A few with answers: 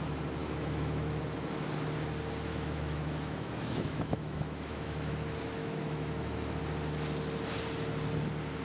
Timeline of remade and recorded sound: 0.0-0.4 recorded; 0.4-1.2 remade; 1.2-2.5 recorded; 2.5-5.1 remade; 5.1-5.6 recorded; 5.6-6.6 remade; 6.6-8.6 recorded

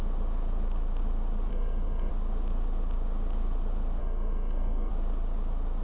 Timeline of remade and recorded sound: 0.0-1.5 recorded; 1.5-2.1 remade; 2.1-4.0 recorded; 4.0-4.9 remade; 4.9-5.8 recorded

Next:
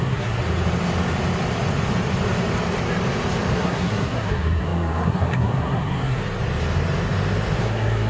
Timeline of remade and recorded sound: 0.0-0.4 remade; 0.4-3.5 recorded; 3.5-6.2 remade; 6.2-7.6 recorded; 7.6-8.1 remade

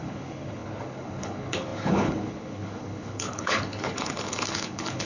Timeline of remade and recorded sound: 0.0-5.1 remade

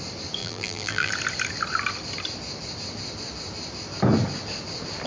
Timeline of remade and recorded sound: 0.0-0.4 recorded; 0.4-1.1 remade; 1.1-5.1 recorded